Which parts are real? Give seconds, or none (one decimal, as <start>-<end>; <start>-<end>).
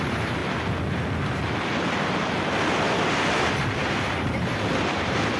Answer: 0.4-3.1